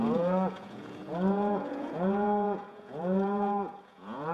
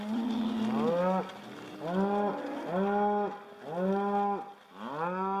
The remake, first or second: first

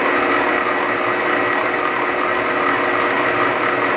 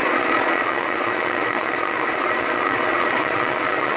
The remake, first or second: second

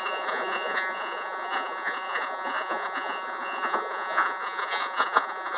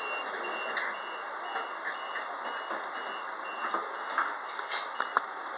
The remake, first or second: first